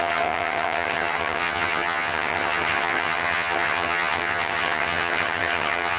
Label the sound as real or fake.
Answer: fake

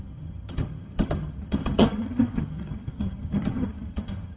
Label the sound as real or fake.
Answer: fake